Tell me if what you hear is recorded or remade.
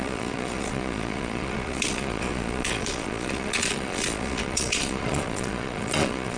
remade